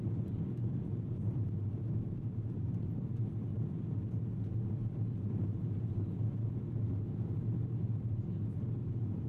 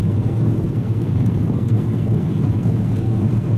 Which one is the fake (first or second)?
second